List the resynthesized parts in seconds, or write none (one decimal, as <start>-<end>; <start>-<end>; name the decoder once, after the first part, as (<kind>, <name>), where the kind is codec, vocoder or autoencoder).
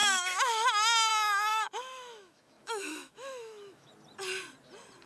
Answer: 0.0-1.1 (autoencoder, DAC-VAE); 1.5-3.9